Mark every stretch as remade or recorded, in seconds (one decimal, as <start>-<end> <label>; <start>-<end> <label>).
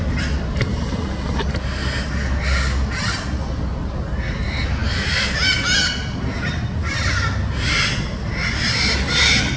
0.0-0.7 recorded; 0.7-1.4 remade; 1.4-9.6 recorded